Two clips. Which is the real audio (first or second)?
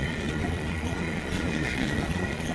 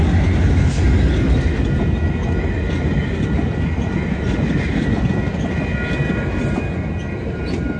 second